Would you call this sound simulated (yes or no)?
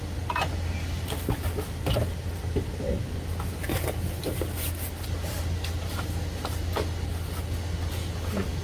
no